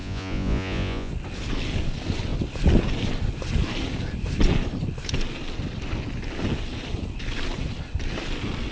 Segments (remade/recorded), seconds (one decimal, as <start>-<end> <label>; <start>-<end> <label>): 0.0-1.1 remade; 1.1-8.7 recorded